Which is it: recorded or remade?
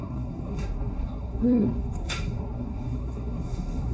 remade